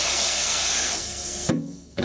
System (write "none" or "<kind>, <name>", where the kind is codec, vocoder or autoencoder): codec, SNAC